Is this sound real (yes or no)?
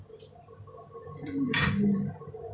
yes